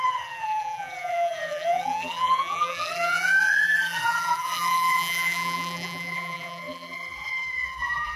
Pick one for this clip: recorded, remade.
remade